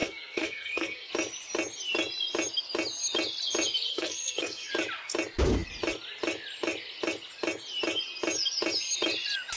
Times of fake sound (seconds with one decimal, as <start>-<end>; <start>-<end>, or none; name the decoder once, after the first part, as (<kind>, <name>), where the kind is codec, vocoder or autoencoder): 0.0-1.1 (codec, SNAC); 3.9-4.7

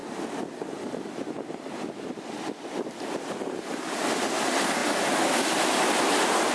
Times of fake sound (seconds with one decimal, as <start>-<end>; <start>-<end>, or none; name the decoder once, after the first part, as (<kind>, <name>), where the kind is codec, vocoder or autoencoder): none